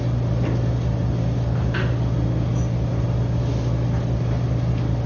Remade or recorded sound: recorded